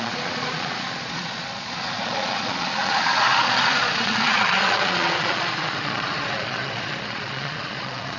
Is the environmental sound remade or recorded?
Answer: remade